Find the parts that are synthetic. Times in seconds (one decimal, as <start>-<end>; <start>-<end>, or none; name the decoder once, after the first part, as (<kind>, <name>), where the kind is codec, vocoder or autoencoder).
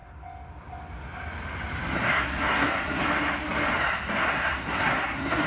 2.0-3.0 (codec, SNAC); 4.1-5.5